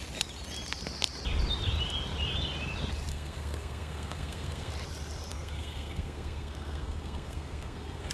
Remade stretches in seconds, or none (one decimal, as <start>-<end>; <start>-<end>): 3.1-4.7; 5.3-8.1